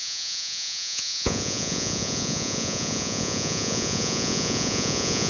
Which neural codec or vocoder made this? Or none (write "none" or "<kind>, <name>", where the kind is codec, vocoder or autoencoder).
vocoder, Vocos